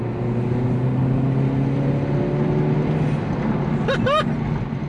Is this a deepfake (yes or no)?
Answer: no